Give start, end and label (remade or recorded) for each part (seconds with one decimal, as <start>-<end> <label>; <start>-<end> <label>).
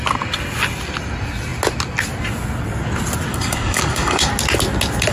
0.0-3.3 recorded; 3.3-4.3 remade; 4.3-5.1 recorded